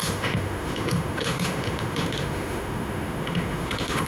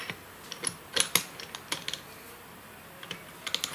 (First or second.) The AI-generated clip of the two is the first